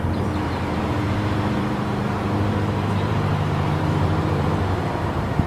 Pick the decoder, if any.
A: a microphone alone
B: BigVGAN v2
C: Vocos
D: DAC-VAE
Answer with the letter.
B